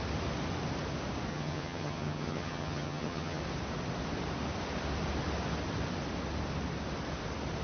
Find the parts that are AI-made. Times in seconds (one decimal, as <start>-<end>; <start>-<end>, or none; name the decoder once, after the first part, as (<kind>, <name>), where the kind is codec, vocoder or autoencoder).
1.3-3.4 (vocoder, HiFi-GAN)